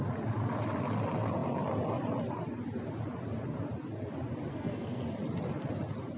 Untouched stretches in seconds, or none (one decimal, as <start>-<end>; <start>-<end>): 0.0-4.5; 5.0-6.2